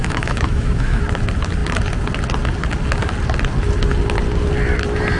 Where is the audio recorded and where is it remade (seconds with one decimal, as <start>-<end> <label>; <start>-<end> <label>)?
0.0-1.0 remade; 1.0-5.2 recorded